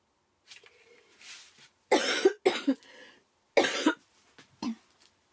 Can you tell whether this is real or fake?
real